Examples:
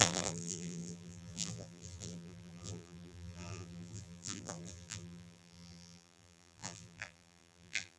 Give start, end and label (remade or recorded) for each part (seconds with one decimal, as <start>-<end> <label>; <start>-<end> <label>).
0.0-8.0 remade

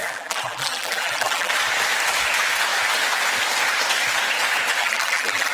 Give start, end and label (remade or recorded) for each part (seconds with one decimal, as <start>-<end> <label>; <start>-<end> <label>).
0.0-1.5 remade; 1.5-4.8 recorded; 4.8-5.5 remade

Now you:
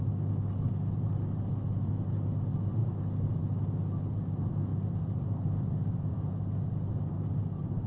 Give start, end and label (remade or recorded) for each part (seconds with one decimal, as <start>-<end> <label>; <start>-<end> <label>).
0.0-4.7 recorded; 4.7-7.4 remade; 7.4-7.9 recorded

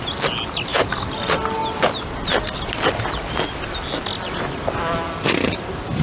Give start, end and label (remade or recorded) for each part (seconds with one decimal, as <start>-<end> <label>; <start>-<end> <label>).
0.0-0.7 recorded; 0.7-1.2 remade; 1.2-6.0 recorded

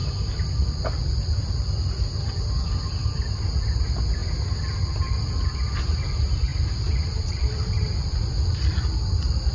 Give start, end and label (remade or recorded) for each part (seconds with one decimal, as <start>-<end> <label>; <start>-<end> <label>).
0.0-4.2 recorded; 4.2-4.9 remade; 4.9-6.5 recorded; 6.5-8.8 remade; 8.8-9.5 recorded

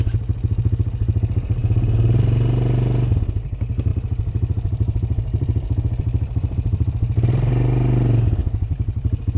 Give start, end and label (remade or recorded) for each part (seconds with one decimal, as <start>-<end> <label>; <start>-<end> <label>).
0.0-3.9 recorded; 3.9-7.5 remade; 7.5-8.4 recorded; 8.4-9.4 remade

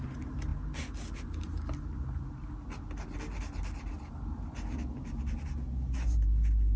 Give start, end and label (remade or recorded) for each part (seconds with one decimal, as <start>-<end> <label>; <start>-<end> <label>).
0.0-6.8 recorded